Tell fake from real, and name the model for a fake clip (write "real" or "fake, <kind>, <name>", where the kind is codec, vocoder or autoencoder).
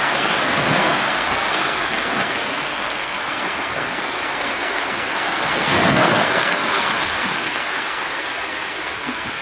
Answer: fake, codec, SNAC